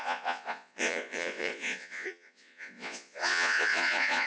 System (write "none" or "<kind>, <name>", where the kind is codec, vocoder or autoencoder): vocoder, Vocos